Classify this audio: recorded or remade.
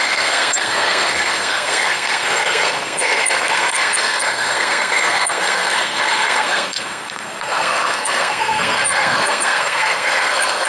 remade